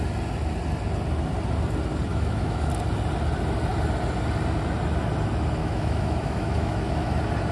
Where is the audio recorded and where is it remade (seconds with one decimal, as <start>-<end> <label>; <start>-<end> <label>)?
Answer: 0.0-2.1 recorded; 2.1-2.7 remade; 2.7-5.6 recorded; 5.6-7.1 remade; 7.1-7.5 recorded

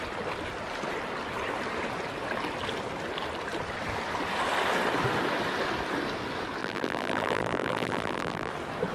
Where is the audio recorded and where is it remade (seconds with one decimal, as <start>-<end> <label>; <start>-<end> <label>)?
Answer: 0.0-6.6 recorded; 6.6-8.5 remade; 8.5-8.9 recorded

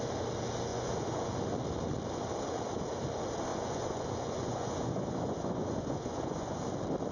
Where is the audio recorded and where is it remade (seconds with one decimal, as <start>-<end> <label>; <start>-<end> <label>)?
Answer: 0.0-0.7 recorded; 0.7-1.3 remade; 1.3-3.5 recorded; 3.5-6.6 remade; 6.6-7.1 recorded

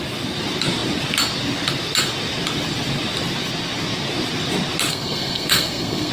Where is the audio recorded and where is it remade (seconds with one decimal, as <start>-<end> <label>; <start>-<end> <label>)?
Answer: 0.0-4.9 recorded; 4.9-6.1 remade

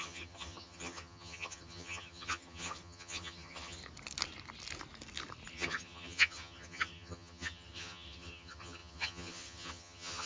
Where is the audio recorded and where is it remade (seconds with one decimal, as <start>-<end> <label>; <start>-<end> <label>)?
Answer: 0.0-3.8 remade; 3.8-5.5 recorded; 5.5-10.3 remade

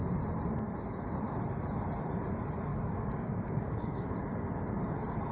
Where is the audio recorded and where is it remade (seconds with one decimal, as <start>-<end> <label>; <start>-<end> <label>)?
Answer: 0.0-2.7 recorded; 2.7-4.1 remade; 4.1-5.3 recorded

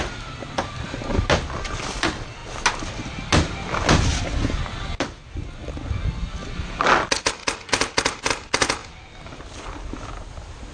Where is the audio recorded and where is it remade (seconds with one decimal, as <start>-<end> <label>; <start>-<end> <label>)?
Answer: 0.0-10.7 recorded

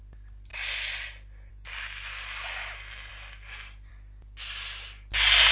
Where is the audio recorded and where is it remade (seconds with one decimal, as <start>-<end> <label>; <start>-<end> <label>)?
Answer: 0.0-5.5 recorded